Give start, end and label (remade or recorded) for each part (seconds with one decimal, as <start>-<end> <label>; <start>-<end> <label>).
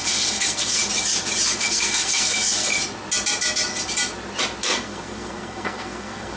0.0-0.8 remade; 0.8-1.6 recorded; 1.6-2.7 remade; 2.7-4.6 recorded; 4.6-6.4 remade